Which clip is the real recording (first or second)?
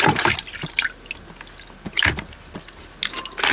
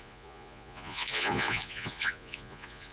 first